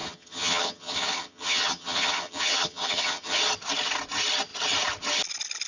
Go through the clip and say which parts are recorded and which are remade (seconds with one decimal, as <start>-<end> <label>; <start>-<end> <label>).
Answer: 0.0-3.4 remade; 3.4-5.7 recorded